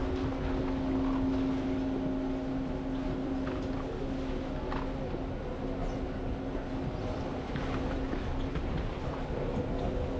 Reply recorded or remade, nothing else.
recorded